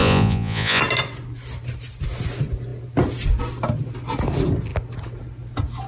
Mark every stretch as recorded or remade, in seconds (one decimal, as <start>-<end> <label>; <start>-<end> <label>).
0.0-0.8 remade; 0.8-5.9 recorded